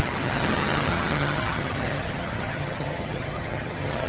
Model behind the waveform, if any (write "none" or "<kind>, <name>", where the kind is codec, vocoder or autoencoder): vocoder, HiFi-GAN